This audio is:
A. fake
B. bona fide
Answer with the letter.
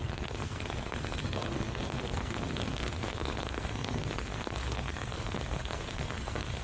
A